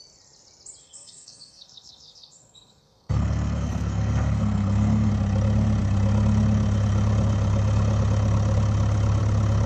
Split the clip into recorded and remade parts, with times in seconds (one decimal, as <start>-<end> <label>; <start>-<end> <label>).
0.0-0.8 recorded; 0.8-5.1 remade; 5.1-9.7 recorded